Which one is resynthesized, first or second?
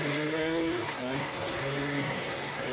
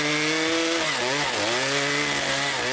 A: first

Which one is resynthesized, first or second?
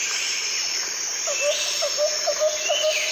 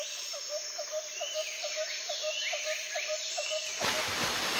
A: second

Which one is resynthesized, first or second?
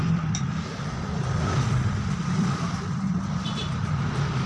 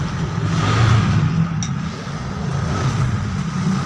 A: first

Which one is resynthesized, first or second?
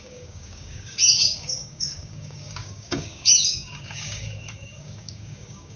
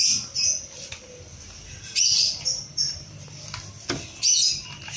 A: first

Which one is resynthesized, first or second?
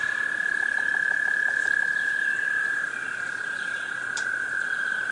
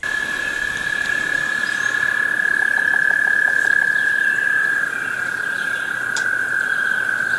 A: first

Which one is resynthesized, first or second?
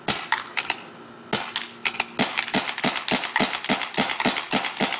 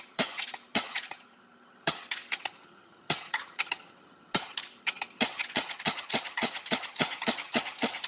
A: second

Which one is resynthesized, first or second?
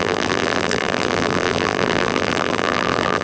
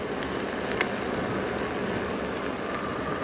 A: first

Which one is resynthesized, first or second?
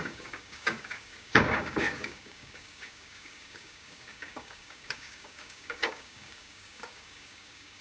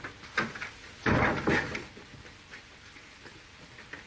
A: first